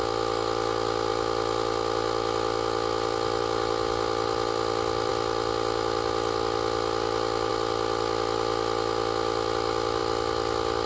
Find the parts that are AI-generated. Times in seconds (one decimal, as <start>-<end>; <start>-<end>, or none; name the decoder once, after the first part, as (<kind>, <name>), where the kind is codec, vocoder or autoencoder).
none